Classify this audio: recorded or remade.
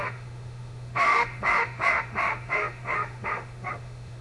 remade